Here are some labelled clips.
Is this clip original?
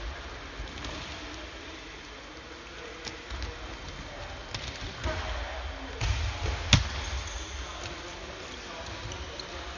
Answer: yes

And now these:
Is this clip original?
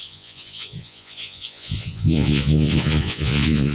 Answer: no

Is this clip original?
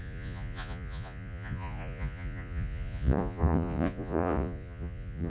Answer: no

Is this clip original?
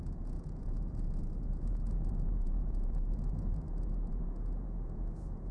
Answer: no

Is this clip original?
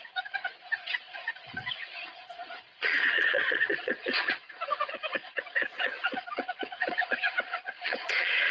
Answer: no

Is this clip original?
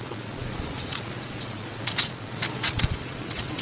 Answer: no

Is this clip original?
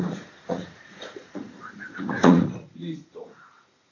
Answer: no